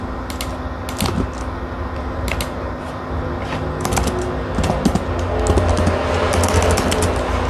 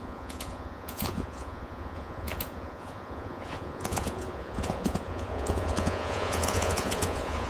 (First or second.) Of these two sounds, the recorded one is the first